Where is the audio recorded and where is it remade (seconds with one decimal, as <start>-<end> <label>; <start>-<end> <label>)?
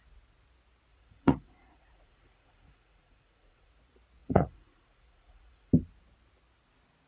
0.0-0.9 recorded; 0.9-3.8 remade; 3.8-4.2 recorded; 4.2-5.7 remade; 5.7-7.1 recorded